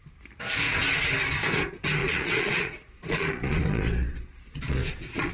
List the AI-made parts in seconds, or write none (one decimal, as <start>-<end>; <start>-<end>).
2.0-5.3